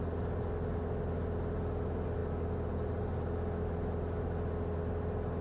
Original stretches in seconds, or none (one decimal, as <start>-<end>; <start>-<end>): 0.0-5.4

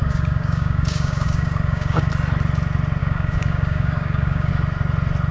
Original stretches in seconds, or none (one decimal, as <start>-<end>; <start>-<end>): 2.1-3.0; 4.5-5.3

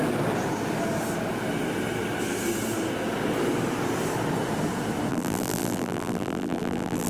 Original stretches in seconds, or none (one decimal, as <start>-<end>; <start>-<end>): 0.0-5.1

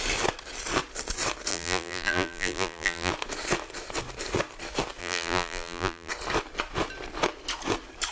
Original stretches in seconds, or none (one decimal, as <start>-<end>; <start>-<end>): 0.0-1.5; 3.1-5.0; 6.1-8.1